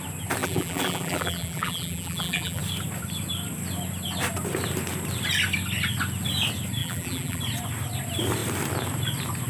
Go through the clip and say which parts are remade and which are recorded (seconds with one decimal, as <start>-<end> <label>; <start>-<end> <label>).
0.0-0.4 recorded; 0.4-2.6 remade; 2.6-6.8 recorded; 6.8-7.4 remade; 7.4-9.5 recorded